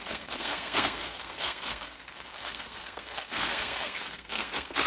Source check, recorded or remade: remade